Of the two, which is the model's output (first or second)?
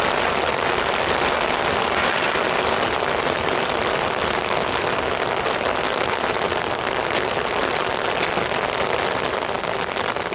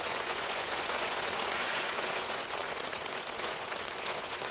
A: second